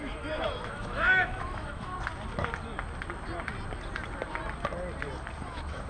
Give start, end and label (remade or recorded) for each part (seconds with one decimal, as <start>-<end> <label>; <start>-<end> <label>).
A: 0.0-1.9 remade; 1.9-5.4 recorded; 5.4-5.9 remade

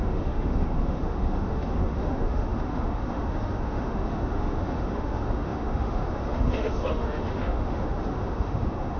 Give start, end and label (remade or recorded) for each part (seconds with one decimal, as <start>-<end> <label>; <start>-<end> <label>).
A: 0.0-9.0 remade

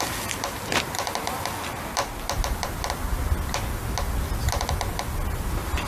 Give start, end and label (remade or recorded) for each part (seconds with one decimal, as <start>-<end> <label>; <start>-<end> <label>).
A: 0.0-5.9 recorded